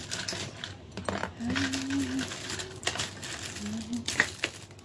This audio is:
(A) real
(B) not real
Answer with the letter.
A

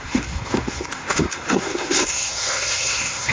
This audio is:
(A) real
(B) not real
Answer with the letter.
B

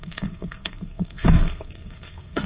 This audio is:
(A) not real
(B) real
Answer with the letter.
A